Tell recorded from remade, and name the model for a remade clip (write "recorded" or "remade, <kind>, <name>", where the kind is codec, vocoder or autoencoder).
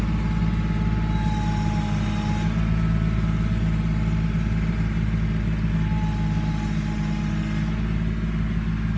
recorded